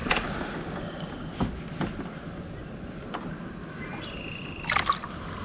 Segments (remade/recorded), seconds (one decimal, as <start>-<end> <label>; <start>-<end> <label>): 0.0-5.4 recorded